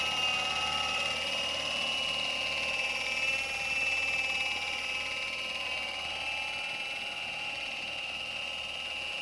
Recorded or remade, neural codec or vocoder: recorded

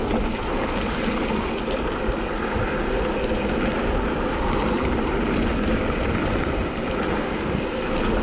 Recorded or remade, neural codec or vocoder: recorded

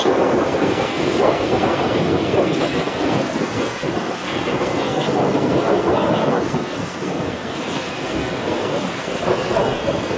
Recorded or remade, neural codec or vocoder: remade, codec, SNAC